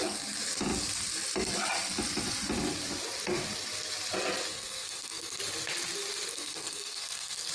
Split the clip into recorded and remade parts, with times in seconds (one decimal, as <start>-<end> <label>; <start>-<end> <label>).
0.0-4.5 recorded; 4.5-5.4 remade; 5.4-6.3 recorded; 6.3-7.5 remade

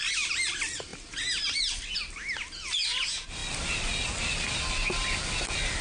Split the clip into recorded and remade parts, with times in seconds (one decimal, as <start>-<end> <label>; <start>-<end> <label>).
0.0-5.8 recorded

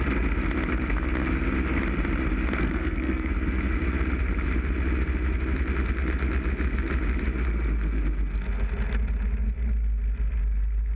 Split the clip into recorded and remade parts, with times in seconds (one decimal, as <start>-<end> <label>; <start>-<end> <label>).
0.0-2.6 recorded; 2.6-3.3 remade; 3.3-11.0 recorded